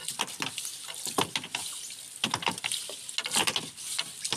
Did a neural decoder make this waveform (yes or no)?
no